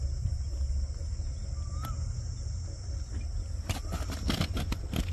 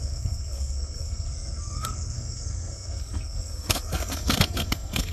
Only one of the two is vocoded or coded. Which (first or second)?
second